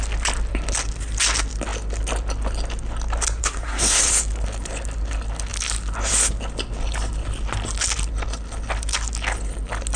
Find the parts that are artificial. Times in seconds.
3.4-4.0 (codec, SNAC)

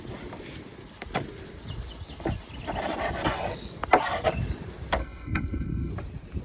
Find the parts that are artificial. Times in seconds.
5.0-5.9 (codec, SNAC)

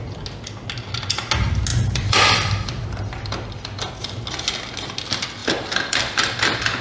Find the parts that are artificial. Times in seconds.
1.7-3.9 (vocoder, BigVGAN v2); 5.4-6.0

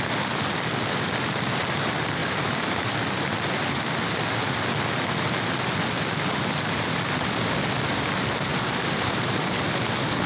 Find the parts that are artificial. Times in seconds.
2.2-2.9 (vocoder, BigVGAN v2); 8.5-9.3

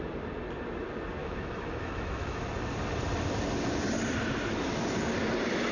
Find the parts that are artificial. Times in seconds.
1.2-2.5 (autoencoder, DAC-VAE)